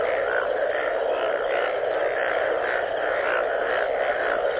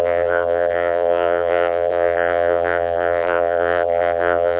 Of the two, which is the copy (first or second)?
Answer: second